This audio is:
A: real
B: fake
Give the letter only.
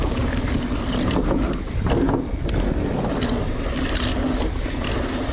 A